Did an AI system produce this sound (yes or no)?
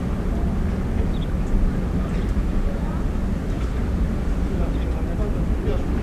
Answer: no